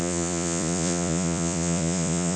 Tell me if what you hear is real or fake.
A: fake